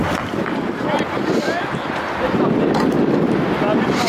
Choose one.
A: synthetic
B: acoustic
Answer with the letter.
B